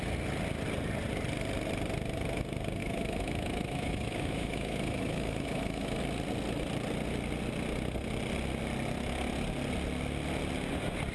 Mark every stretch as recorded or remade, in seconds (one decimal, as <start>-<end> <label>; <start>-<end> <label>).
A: 0.0-2.8 recorded; 2.8-6.0 remade; 6.0-11.1 recorded